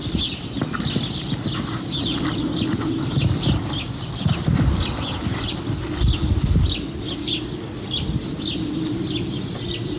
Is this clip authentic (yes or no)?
yes